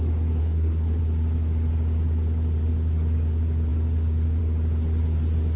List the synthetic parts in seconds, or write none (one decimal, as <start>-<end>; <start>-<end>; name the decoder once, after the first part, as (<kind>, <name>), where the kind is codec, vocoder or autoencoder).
0.4-1.0 (codec, SNAC)